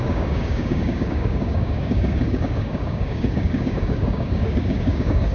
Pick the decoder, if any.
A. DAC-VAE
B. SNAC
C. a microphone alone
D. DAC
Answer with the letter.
D